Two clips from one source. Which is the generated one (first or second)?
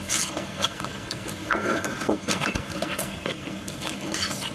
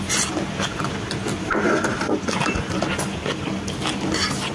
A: first